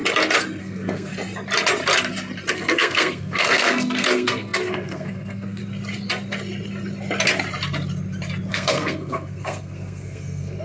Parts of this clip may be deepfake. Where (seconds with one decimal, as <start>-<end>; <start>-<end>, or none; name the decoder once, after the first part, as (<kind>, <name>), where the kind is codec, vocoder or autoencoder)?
0.6-1.1 (codec, SNAC); 2.5-5.6; 8.5-10.6